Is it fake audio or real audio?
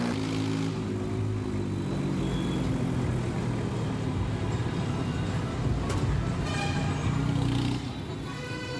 real